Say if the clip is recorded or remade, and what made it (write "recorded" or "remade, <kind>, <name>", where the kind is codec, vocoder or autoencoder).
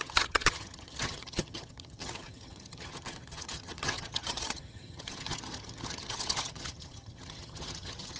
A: remade, vocoder, HiFi-GAN